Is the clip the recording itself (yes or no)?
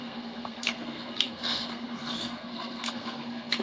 no